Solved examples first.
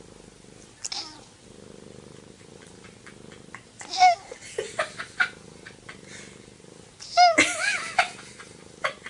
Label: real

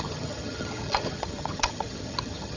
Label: fake